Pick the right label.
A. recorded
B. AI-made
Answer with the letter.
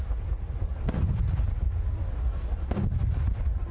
A